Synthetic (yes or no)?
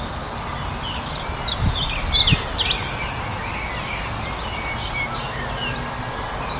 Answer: no